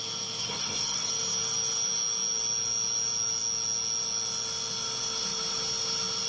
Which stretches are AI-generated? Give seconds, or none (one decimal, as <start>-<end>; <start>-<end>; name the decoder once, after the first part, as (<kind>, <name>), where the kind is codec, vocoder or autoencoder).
0.4-1.1 (codec, SNAC)